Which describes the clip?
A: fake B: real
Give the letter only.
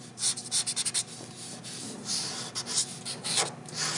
B